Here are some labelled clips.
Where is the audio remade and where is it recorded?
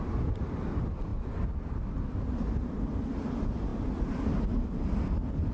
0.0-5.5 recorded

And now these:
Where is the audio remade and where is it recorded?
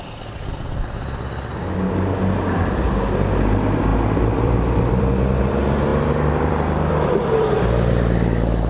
0.0-3.9 recorded; 3.9-5.1 remade; 5.1-5.9 recorded; 5.9-8.7 remade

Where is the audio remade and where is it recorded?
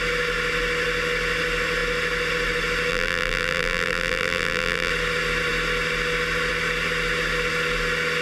0.0-2.9 recorded; 2.9-4.9 remade; 4.9-8.2 recorded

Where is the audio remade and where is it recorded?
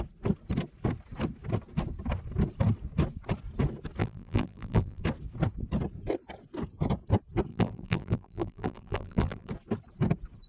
0.0-4.0 recorded; 4.0-5.0 remade; 5.0-7.5 recorded; 7.5-9.5 remade; 9.5-10.5 recorded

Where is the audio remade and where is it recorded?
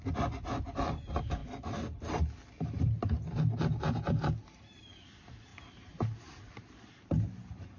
0.0-5.5 recorded; 5.5-6.9 remade; 6.9-7.8 recorded